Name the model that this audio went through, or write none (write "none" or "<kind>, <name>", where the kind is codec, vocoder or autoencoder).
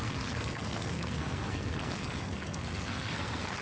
codec, SNAC